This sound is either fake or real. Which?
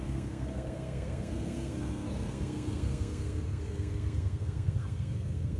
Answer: fake